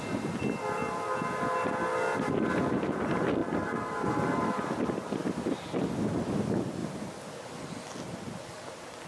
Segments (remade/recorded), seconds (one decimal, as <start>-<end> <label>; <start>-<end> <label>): 0.0-5.2 recorded; 5.2-6.1 remade; 6.1-9.1 recorded